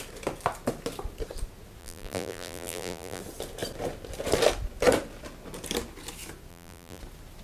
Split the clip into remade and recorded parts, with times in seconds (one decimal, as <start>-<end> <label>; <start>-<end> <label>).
0.0-1.8 recorded; 1.8-3.2 remade; 3.2-6.5 recorded; 6.5-7.0 remade; 7.0-7.4 recorded